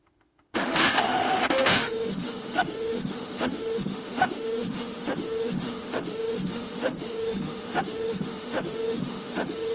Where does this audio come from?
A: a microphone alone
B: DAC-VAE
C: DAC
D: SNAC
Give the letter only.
B